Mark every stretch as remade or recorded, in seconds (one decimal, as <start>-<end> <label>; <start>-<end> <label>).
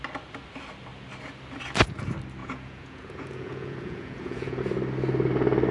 0.0-2.4 recorded; 2.4-4.6 remade; 4.6-5.7 recorded